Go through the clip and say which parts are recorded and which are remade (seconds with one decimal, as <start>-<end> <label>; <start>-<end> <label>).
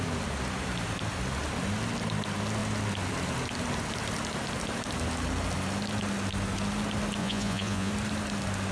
0.0-7.2 recorded; 7.2-7.9 remade; 7.9-8.7 recorded